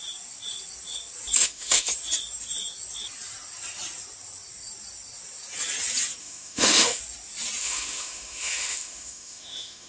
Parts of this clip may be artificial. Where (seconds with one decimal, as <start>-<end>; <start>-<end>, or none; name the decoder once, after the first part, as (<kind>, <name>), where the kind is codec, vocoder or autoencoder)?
1.4-1.9 (autoencoder, DAC-VAE); 6.2-7.0; 7.6-9.9